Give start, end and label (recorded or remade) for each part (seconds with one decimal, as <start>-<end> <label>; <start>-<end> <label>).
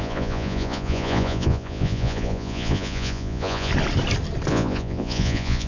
0.0-3.7 remade; 3.7-4.5 recorded; 4.5-5.7 remade